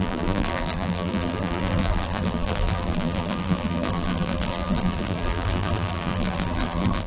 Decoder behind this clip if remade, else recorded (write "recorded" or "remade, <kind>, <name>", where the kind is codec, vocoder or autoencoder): remade, vocoder, BigVGAN v2